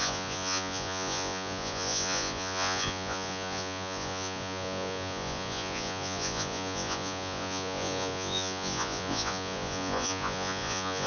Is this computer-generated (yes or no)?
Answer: yes